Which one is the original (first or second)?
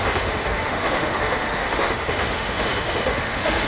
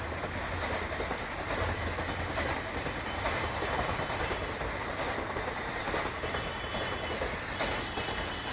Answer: second